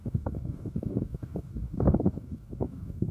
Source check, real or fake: fake